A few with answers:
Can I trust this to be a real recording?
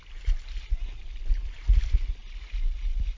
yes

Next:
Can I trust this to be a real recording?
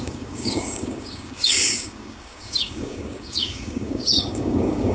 no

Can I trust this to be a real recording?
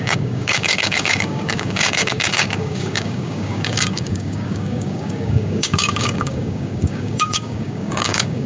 no